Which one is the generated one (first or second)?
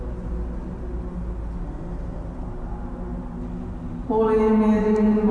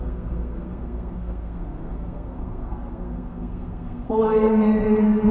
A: second